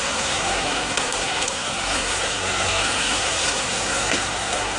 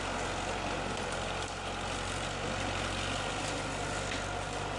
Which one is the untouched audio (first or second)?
second